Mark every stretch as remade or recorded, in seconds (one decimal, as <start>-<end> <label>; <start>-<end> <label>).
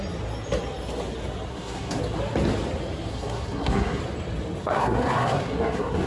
0.0-1.5 recorded; 1.5-2.0 remade; 2.0-3.1 recorded; 3.1-4.0 remade; 4.0-4.6 recorded; 4.6-6.1 remade